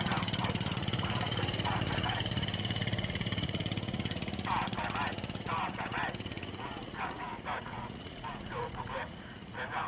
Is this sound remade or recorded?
remade